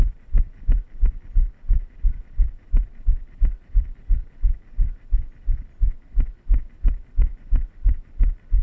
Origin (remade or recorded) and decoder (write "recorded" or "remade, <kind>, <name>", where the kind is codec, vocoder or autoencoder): recorded